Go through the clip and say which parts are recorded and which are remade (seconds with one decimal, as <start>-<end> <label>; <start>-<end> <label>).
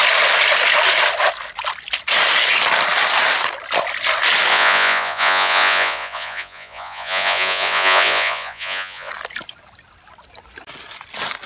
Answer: 0.0-4.5 recorded; 4.5-9.1 remade; 9.1-11.5 recorded